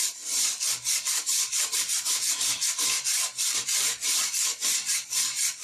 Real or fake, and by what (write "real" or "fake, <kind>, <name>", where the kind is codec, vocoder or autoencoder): fake, vocoder, BigVGAN v2